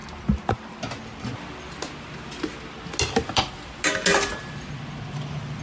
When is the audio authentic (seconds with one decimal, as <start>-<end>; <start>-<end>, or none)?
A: 0.0-5.6

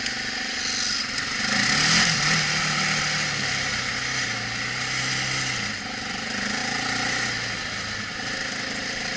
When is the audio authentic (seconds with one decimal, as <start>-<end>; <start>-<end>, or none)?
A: 0.0-9.2

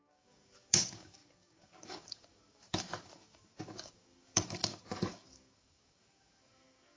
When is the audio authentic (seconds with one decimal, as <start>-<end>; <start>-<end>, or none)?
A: none

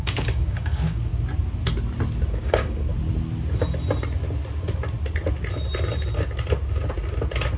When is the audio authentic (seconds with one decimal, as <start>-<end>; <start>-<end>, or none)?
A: 1.1-2.3; 2.9-7.6

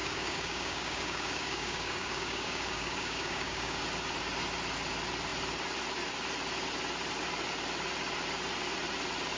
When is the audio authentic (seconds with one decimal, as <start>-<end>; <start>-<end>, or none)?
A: 3.8-9.4

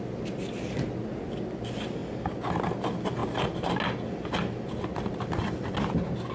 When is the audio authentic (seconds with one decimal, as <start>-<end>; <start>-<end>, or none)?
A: 0.0-6.3

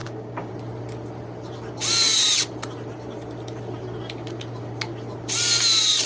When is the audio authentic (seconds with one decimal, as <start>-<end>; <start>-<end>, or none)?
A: 0.5-6.1